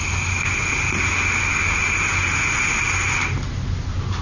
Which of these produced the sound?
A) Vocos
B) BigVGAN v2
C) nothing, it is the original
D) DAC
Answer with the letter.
C